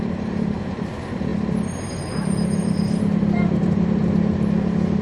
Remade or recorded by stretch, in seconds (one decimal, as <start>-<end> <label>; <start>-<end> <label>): 0.0-1.3 remade; 1.3-1.9 recorded; 1.9-4.0 remade; 4.0-5.0 recorded